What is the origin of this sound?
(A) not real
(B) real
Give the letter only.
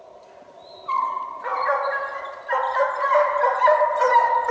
A